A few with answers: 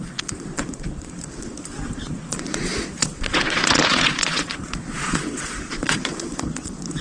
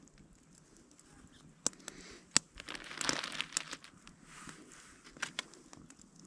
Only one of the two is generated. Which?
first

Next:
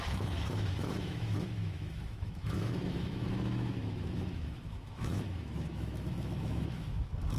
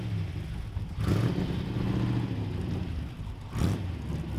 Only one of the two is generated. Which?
first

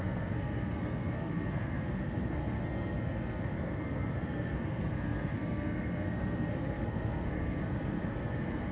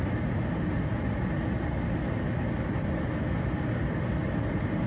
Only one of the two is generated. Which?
first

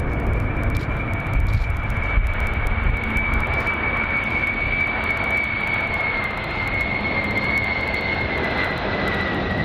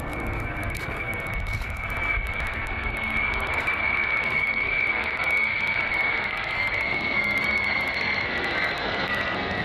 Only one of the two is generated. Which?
second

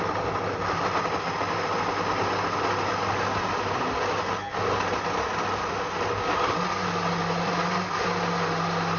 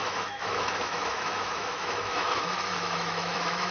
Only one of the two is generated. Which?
second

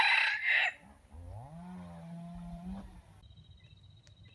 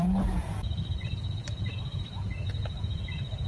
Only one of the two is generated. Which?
second